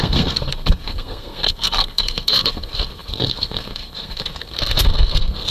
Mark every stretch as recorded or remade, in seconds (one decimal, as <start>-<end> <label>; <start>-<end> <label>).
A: 0.0-5.5 remade